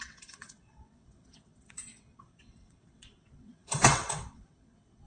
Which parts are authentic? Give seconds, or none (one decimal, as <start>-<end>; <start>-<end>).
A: none